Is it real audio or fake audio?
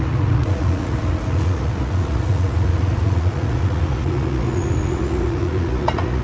fake